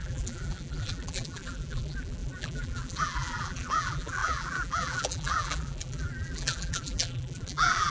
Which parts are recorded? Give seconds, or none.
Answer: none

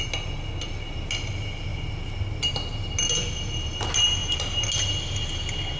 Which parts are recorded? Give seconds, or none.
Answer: 0.0-5.8

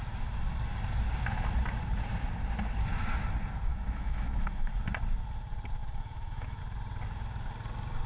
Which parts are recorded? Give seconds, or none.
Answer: 0.0-3.7; 4.7-5.8; 6.6-8.1